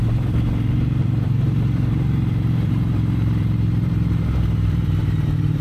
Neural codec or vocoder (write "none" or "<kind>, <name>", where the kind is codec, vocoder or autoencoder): vocoder, BigVGAN v2